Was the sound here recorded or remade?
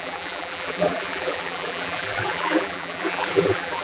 remade